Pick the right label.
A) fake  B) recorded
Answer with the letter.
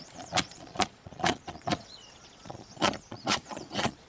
A